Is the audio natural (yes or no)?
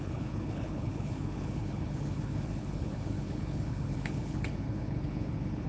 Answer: no